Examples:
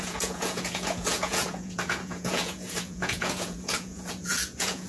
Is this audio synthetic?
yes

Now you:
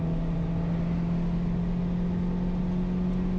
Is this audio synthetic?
no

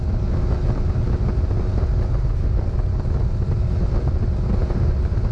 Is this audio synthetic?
no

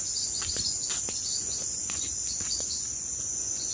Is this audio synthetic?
yes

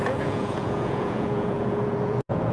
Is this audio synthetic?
yes